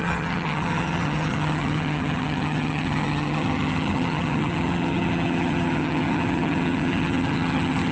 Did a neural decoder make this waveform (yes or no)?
yes